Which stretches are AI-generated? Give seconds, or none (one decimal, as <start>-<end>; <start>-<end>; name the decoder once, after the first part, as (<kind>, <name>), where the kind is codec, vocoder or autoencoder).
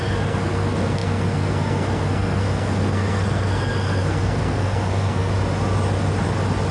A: 0.0-5.3 (codec, SNAC)